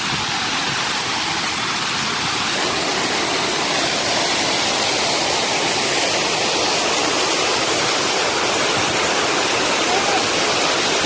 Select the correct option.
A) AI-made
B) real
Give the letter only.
B